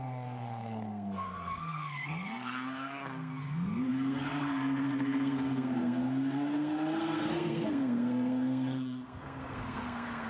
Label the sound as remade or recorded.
remade